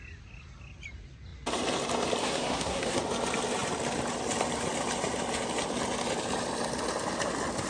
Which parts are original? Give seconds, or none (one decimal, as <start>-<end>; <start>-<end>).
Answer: 0.0-2.2; 3.0-7.7

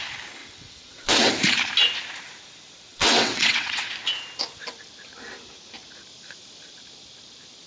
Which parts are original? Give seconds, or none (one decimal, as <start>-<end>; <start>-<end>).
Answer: 0.0-0.4; 1.3-2.9; 3.9-7.7

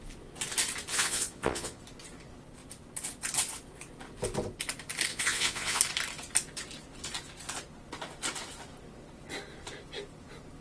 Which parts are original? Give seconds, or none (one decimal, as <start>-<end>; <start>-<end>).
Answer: 0.0-0.9; 1.8-5.1; 5.8-10.6

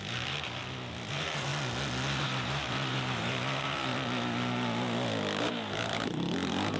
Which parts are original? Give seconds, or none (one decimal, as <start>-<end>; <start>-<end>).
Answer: 0.6-1.1; 1.5-2.2; 3.9-5.4